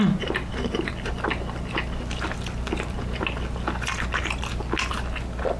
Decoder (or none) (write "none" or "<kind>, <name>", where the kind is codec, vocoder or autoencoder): none